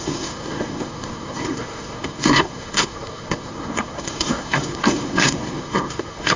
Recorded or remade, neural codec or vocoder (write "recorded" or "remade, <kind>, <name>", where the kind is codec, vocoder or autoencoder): remade, codec, SNAC